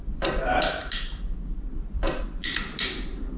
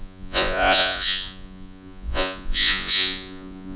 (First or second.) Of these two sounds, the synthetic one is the second